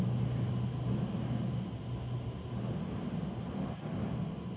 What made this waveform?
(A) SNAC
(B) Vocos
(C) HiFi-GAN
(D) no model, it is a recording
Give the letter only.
D